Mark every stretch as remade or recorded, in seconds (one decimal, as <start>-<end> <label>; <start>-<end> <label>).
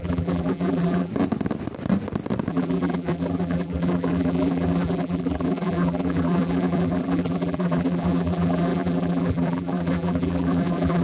0.0-1.1 remade; 1.1-2.5 recorded; 2.5-11.0 remade